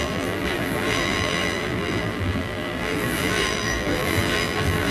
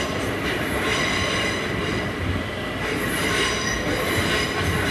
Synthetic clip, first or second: first